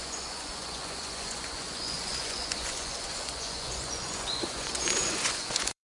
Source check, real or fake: fake